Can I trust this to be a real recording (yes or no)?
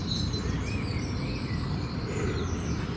yes